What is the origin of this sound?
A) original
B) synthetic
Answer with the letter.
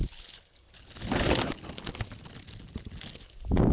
A